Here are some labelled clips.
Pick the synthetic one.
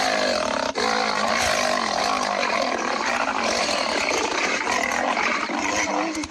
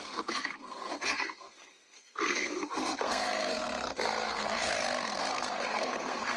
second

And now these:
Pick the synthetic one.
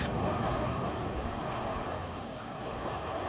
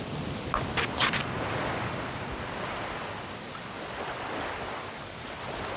first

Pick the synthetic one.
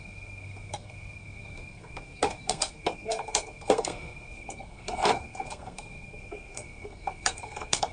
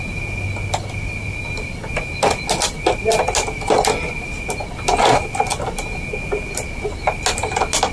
first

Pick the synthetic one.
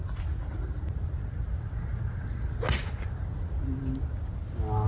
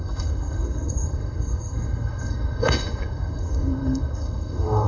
second